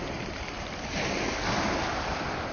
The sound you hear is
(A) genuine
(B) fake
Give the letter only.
A